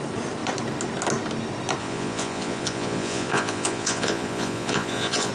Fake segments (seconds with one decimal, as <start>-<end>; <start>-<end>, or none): 1.8-5.3